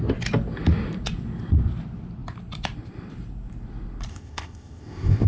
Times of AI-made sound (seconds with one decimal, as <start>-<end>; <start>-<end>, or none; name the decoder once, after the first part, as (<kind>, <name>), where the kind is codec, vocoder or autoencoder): 4.1-5.3 (codec, ZipCodec)